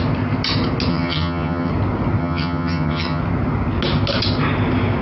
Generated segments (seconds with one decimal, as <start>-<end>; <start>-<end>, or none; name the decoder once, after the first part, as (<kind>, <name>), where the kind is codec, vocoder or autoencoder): 0.9-1.7 (vocoder, HiFi-GAN); 2.2-3.2